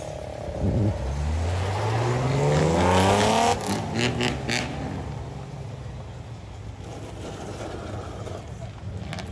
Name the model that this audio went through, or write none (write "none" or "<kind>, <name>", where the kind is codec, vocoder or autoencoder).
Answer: none